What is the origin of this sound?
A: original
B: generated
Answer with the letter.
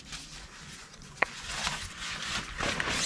B